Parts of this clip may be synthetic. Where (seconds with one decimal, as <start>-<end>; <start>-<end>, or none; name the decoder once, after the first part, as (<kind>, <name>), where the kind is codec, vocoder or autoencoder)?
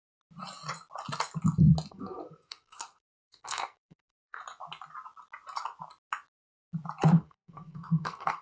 1.9-4.4 (codec, SNAC); 7.1-8.4